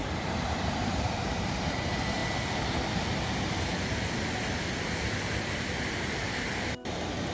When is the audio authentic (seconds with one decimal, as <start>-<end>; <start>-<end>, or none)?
1.5-7.3